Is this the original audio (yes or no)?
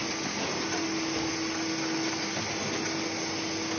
yes